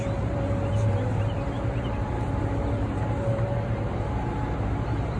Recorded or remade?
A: remade